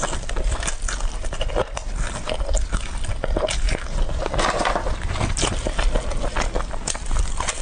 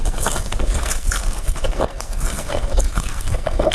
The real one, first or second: first